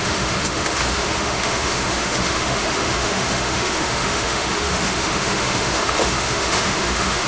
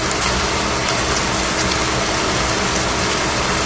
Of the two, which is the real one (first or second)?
second